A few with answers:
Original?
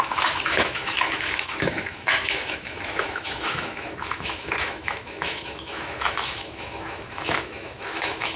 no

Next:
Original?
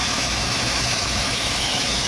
no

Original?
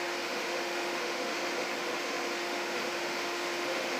no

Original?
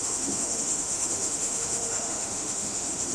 no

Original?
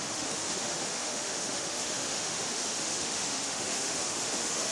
no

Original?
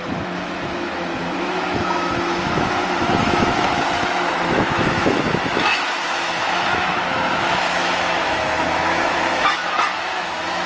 no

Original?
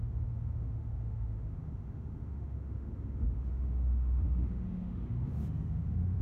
no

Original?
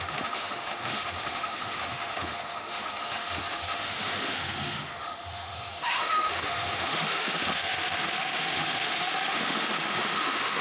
no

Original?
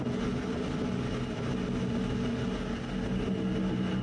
yes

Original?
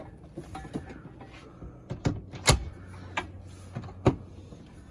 yes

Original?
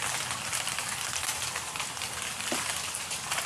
yes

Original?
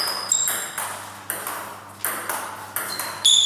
yes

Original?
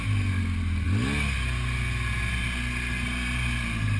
yes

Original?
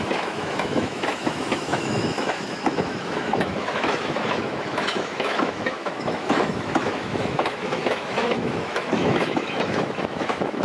no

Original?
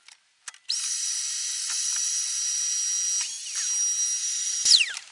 yes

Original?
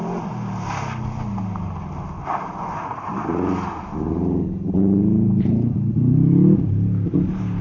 yes